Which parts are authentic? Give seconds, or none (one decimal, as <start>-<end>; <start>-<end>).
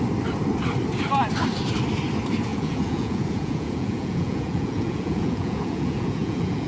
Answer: 0.0-2.5